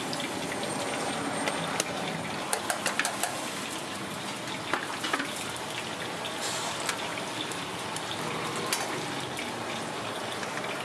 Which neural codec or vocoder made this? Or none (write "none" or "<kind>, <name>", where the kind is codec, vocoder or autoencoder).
none